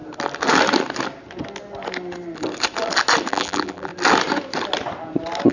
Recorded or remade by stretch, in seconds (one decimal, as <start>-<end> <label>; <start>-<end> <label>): 0.0-3.3 recorded; 3.3-3.9 remade; 3.9-5.5 recorded